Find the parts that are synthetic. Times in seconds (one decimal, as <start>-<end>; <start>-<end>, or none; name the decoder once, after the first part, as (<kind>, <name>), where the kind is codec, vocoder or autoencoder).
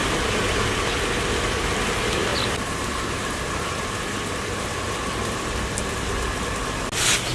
0.0-0.6 (vocoder, BigVGAN v2); 2.3-5.4